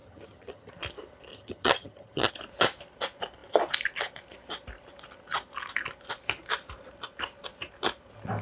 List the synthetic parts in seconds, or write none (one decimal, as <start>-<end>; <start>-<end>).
0.0-0.7; 1.3-2.3